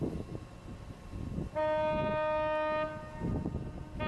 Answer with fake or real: real